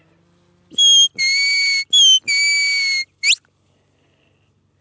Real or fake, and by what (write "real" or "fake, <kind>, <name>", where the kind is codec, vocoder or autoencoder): real